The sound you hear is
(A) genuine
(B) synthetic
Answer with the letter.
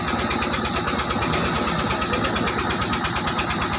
A